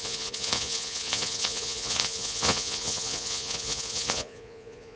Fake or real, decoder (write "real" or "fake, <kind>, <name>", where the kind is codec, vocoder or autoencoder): fake, vocoder, Vocos